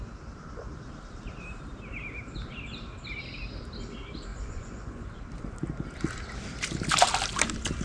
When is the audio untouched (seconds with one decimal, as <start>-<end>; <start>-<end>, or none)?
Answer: 0.0-4.3; 5.2-7.8